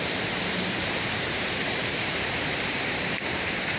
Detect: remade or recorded remade